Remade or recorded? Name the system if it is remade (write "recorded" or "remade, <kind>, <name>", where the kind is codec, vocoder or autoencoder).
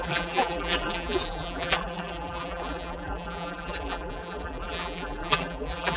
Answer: remade, vocoder, BigVGAN v2